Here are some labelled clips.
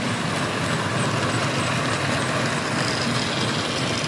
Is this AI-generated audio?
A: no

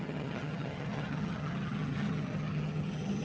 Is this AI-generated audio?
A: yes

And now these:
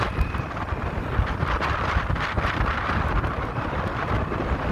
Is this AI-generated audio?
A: no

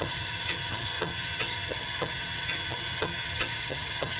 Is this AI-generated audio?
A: yes